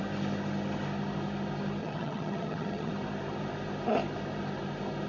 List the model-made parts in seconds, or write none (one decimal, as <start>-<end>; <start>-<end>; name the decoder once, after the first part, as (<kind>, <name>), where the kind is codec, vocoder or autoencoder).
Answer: 1.8-2.9 (vocoder, HiFi-GAN)